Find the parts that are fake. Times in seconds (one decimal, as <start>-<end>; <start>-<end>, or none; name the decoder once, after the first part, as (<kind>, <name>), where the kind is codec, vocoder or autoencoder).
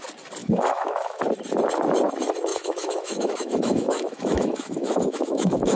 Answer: 0.4-1.2 (autoencoder, DAC-VAE); 2.5-5.8